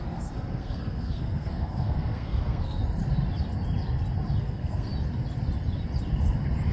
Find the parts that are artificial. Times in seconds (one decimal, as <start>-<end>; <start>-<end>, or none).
0.0-2.8; 4.4-4.9

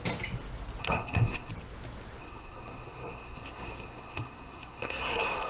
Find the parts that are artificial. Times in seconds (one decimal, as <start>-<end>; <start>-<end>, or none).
0.8-1.5; 2.2-5.5

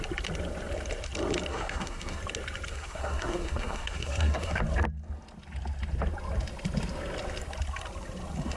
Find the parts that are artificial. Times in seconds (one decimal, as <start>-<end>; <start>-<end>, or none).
1.5-2.2; 2.7-4.6

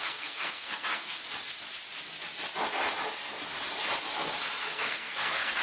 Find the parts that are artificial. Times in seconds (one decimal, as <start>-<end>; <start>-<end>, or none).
0.0-1.2; 4.6-5.6

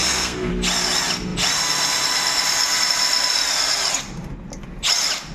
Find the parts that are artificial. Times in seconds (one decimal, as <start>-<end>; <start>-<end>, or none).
0.0-0.5

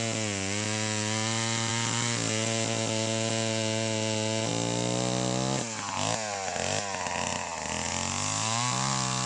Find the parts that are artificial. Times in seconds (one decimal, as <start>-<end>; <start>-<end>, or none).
none